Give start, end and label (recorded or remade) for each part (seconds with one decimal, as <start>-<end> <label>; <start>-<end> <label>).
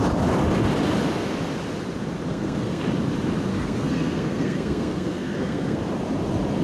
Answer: 0.0-2.3 recorded; 2.3-2.8 remade; 2.8-3.5 recorded; 3.5-5.8 remade; 5.8-6.6 recorded